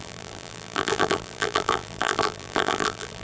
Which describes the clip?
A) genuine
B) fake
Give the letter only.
B